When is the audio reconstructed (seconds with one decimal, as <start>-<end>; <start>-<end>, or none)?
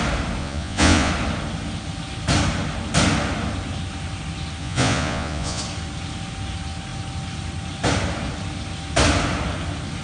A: 0.4-1.1; 4.6-5.6